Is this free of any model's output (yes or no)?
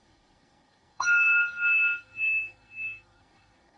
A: no